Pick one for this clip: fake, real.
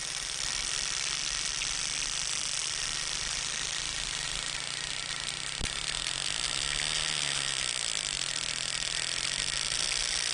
real